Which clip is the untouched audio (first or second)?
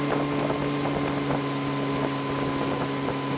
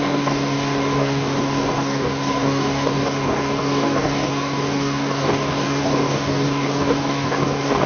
first